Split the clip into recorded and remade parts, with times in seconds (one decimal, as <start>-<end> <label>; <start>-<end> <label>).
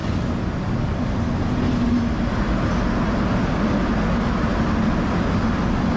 0.0-6.0 recorded